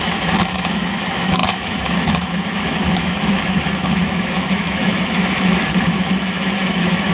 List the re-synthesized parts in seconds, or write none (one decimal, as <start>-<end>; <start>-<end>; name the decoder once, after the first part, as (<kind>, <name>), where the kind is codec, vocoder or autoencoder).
0.0-7.1 (autoencoder, DAC-VAE)